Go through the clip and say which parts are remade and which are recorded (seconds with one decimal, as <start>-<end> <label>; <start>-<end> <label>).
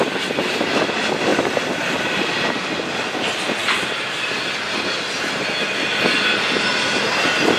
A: 0.0-7.6 recorded